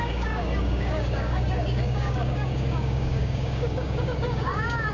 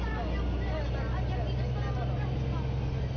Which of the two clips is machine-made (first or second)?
first